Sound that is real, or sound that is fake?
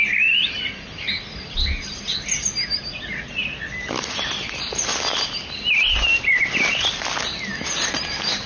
real